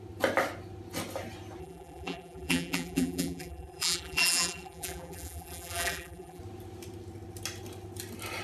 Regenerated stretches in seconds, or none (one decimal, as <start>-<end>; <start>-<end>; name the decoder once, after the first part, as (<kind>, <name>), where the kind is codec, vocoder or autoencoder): 1.6-6.4 (vocoder, BigVGAN v2)

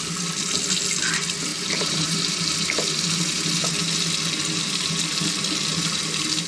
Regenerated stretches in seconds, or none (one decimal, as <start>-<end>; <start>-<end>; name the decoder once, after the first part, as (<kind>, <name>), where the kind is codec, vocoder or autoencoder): 1.5-2.3 (vocoder, BigVGAN v2)